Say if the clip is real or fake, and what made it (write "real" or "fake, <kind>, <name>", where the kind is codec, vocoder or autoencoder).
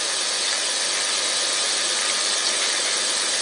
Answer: real